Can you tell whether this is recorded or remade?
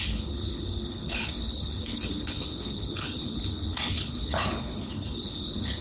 remade